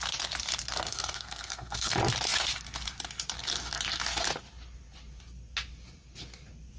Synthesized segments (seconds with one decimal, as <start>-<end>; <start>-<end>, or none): 0.9-1.9